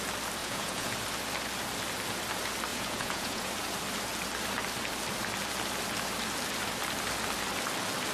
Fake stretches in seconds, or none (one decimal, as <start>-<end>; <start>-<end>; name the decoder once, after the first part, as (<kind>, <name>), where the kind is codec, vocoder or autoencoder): 0.4-0.9 (vocoder, Vocos); 2.7-3.5